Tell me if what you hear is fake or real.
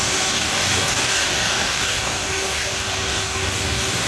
fake